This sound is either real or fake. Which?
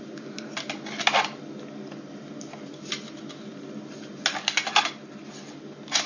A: real